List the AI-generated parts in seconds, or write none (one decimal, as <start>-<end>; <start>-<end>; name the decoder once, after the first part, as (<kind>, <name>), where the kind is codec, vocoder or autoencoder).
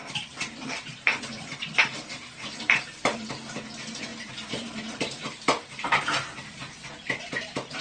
0.0-3.3 (vocoder, BigVGAN v2); 4.1-6.0